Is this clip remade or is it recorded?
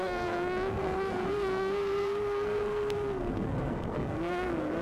remade